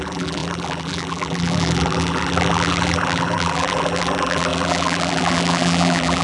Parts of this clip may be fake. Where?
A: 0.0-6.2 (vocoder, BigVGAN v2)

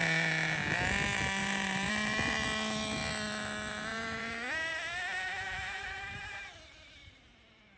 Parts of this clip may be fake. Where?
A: 1.4-1.9 (vocoder, BigVGAN v2); 3.9-7.8

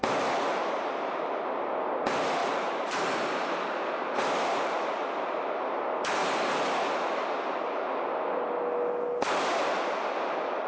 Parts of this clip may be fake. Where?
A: 2.4-3.0 (vocoder, BigVGAN v2)

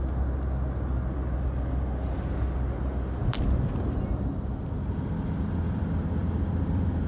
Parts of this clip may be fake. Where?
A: 3.2-3.7 (vocoder, BigVGAN v2); 6.2-7.1

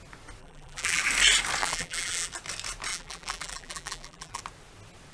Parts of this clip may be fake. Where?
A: 0.4-1.0 (vocoder, BigVGAN v2); 1.6-2.3; 2.9-4.4

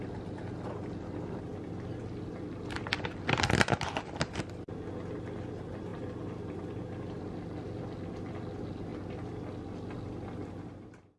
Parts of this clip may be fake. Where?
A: none